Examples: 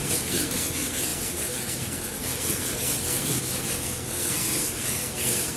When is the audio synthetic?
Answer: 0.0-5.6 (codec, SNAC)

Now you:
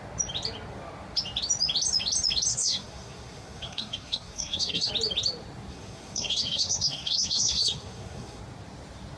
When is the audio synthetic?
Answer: 2.5-4.9 (codec, SNAC); 5.7-8.4

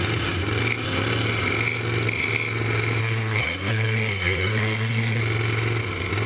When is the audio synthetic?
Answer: 3.0-5.2 (codec, SNAC)

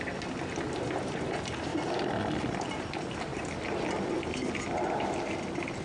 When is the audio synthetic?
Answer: none

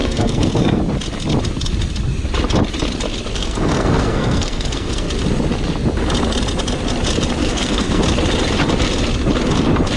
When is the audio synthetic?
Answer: 0.0-0.8 (codec, SNAC); 3.3-5.1; 7.4-8.0

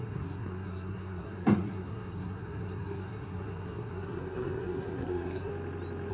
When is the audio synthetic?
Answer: 0.0-5.5 (codec, SNAC)

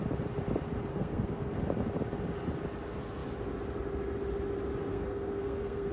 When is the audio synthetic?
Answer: 0.9-1.5 (codec, SNAC); 4.9-5.9